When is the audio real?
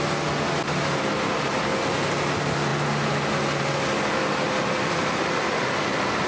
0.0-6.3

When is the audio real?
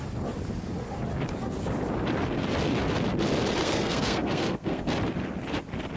0.0-3.6; 4.9-6.0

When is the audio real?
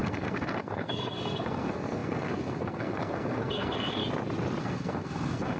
4.0-4.6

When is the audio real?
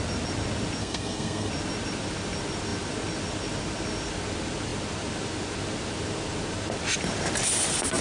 0.0-0.8; 1.5-8.0